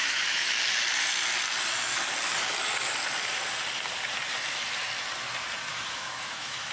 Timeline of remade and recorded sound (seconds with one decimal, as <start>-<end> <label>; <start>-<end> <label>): 0.0-0.5 remade; 0.5-5.7 recorded; 5.7-6.7 remade